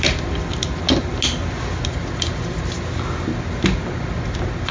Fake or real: real